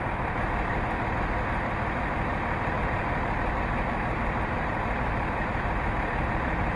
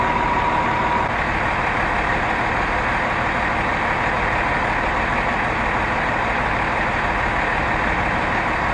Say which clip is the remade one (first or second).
first